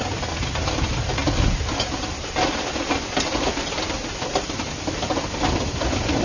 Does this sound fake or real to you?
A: real